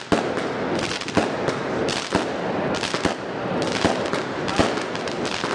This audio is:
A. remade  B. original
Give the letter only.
B